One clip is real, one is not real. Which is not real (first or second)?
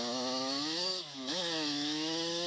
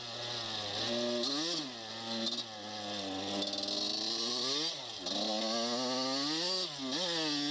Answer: first